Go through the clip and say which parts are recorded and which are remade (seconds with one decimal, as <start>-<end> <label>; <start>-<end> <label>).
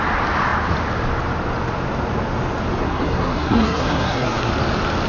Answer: 0.0-2.8 recorded; 2.8-4.5 remade; 4.5-5.1 recorded